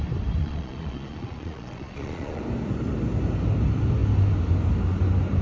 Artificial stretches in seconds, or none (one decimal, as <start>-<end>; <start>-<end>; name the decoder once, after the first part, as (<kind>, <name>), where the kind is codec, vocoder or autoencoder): 0.4-2.4 (vocoder, Vocos)